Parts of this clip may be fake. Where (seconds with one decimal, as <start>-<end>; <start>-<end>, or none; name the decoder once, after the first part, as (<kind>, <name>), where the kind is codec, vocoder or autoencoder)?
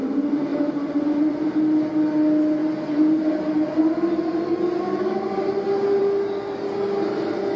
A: 0.5-1.3 (vocoder, BigVGAN v2); 2.6-3.8